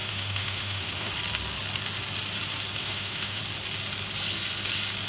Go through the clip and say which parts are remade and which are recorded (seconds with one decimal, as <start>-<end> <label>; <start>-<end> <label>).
0.0-1.1 remade; 1.1-2.8 recorded; 2.8-3.4 remade; 3.4-5.1 recorded